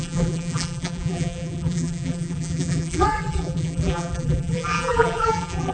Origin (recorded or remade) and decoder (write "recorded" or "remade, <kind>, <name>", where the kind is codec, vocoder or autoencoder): remade, vocoder, BigVGAN v2